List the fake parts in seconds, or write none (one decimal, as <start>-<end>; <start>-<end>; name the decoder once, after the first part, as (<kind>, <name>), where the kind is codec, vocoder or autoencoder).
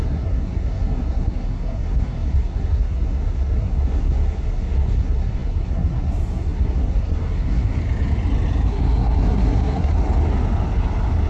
0.0-7.8 (codec, SNAC); 8.7-9.9